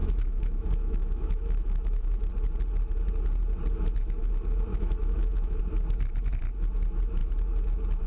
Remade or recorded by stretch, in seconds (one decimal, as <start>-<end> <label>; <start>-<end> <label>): 0.0-2.3 remade; 2.3-4.7 recorded; 4.7-5.6 remade; 5.6-8.1 recorded

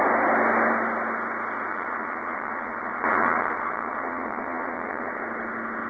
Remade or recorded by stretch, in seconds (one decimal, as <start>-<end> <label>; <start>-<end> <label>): 0.0-1.7 recorded; 1.7-5.2 remade; 5.2-5.9 recorded

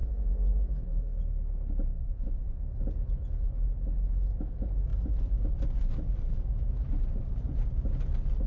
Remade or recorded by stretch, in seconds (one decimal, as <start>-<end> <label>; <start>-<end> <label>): 0.0-1.0 remade; 1.0-2.0 recorded; 2.0-2.6 remade; 2.6-8.5 recorded

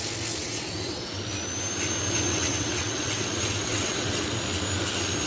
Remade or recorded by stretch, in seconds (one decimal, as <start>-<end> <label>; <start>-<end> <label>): 0.0-0.4 recorded; 0.4-1.2 remade; 1.2-2.3 recorded; 2.3-4.2 remade; 4.2-5.3 recorded

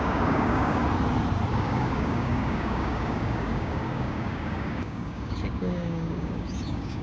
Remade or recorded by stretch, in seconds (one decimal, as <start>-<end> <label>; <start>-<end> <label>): 0.0-0.8 remade; 0.8-1.5 recorded; 1.5-7.0 remade

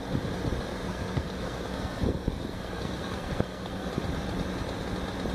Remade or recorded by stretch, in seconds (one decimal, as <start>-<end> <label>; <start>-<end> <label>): 0.0-0.7 recorded; 0.7-3.9 remade; 3.9-5.3 recorded

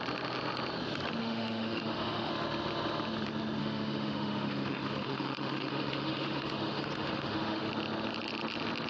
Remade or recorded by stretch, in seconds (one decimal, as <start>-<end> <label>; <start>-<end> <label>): 0.0-1.2 recorded; 1.2-2.3 remade; 2.3-3.6 recorded; 3.6-7.7 remade; 7.7-8.9 recorded

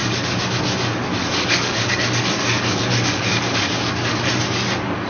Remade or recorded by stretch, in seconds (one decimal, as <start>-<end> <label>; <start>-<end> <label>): 0.0-0.6 remade; 0.6-1.2 recorded; 1.2-4.3 remade; 4.3-5.1 recorded